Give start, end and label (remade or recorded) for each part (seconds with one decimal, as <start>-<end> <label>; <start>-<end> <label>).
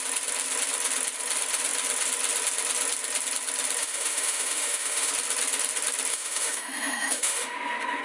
0.0-3.8 recorded; 3.8-5.1 remade; 5.1-6.1 recorded; 6.1-8.0 remade